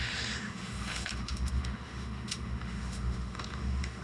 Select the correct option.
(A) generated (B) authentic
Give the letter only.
A